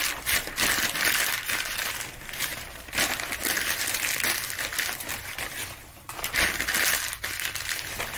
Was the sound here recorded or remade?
recorded